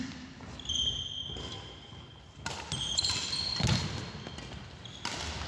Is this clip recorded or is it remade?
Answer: recorded